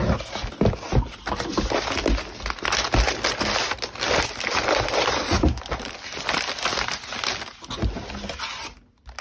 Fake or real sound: real